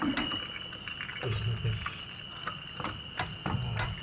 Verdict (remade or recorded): recorded